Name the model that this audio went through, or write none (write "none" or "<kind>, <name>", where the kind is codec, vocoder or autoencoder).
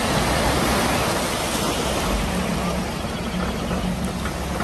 none